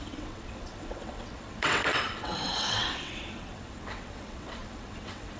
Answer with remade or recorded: remade